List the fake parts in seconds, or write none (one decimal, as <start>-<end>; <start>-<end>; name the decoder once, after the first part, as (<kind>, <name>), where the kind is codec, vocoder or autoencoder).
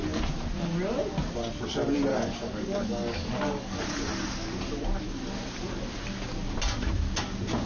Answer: 2.1-3.8 (codec, DAC)